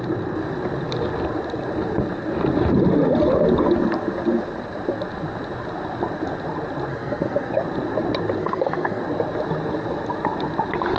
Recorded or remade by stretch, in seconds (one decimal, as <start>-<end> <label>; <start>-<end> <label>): 0.0-6.9 recorded; 6.9-7.5 remade; 7.5-8.4 recorded; 8.4-9.0 remade; 9.0-11.0 recorded